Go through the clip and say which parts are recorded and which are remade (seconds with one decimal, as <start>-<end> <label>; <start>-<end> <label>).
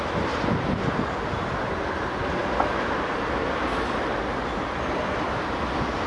0.0-6.1 recorded